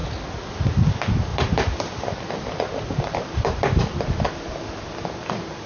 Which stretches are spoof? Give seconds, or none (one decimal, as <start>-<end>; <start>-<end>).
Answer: 1.3-3.8